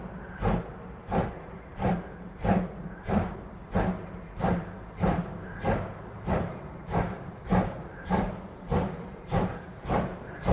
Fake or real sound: fake